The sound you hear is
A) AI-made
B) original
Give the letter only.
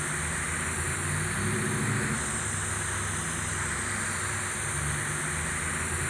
B